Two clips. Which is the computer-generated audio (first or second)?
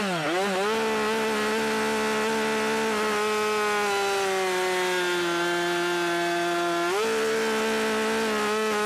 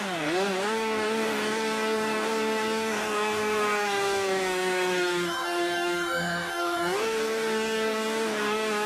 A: second